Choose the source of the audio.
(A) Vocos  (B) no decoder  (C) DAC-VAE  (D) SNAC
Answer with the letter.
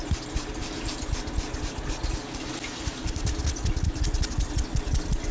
B